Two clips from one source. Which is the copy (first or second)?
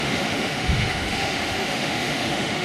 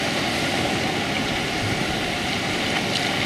first